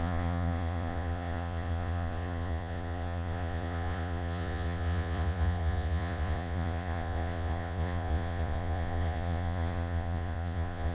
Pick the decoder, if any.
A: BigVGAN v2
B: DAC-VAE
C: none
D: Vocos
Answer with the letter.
D